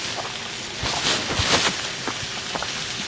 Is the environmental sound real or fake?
real